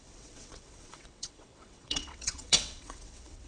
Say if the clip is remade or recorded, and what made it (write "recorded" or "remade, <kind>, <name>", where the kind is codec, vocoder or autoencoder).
remade, vocoder, WaveNeXt